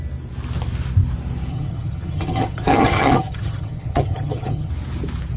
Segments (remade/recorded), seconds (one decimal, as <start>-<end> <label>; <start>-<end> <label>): 0.0-1.5 recorded; 1.5-4.7 remade; 4.7-5.4 recorded